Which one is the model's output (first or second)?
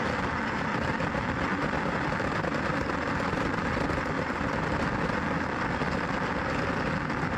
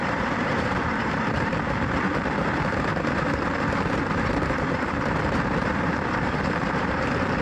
second